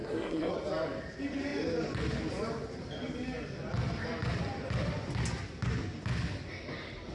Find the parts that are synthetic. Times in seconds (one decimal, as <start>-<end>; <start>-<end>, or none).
0.0-0.5

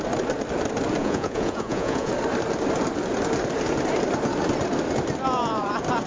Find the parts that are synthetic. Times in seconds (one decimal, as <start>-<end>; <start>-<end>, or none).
1.0-2.1